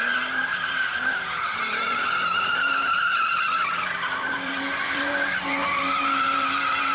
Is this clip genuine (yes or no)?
no